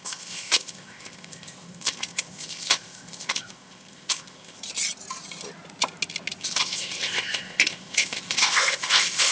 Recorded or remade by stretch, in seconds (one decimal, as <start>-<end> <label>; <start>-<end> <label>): 0.0-4.6 remade; 4.6-6.4 recorded; 6.4-9.3 remade